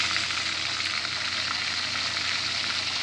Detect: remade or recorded recorded